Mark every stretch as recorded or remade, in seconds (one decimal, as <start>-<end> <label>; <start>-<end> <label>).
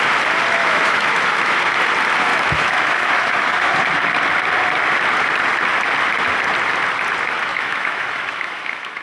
0.0-0.6 recorded; 0.6-1.6 remade; 1.6-2.3 recorded; 2.3-3.7 remade; 3.7-7.5 recorded; 7.5-9.0 remade